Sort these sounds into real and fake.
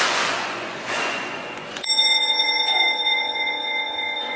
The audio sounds fake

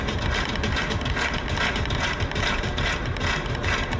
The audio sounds real